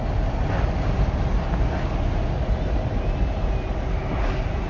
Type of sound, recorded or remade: recorded